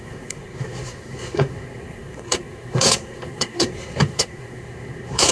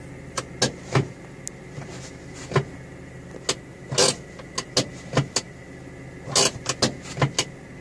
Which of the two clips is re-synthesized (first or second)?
first